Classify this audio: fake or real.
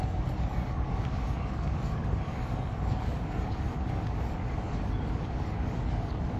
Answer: fake